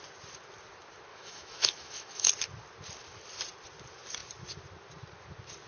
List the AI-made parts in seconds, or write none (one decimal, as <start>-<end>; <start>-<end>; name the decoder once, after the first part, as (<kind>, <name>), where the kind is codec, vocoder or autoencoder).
1.1-2.3 (autoencoder, DAC-VAE)